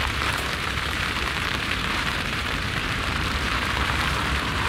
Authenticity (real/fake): fake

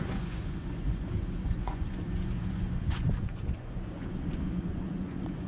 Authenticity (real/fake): fake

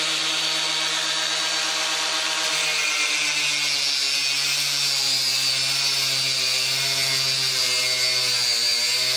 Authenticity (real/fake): real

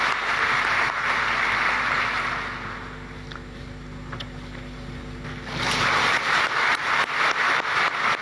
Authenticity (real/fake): real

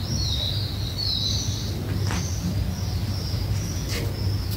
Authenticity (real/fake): real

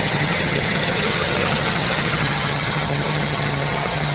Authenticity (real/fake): fake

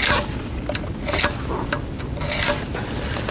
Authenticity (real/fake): real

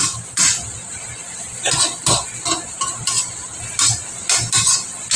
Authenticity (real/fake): real